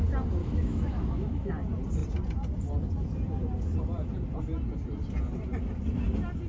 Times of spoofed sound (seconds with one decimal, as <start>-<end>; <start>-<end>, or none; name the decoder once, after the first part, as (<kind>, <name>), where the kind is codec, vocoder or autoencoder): 0.4-1.5 (autoencoder, DAC-VAE)